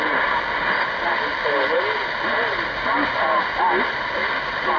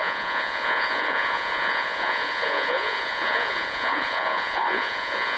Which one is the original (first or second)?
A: first